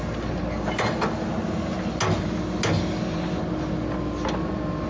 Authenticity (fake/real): real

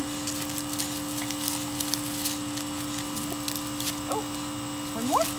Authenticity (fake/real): real